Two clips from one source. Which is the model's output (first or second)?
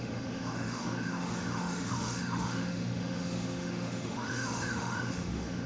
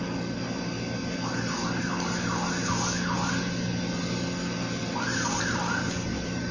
first